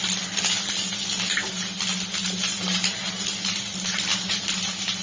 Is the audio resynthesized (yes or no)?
no